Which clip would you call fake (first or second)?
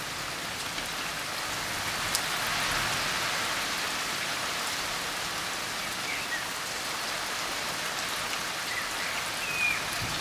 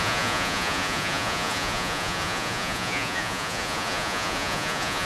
second